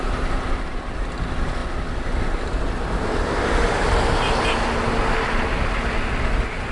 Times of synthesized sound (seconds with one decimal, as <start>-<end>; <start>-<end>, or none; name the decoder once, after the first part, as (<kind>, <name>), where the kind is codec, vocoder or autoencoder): none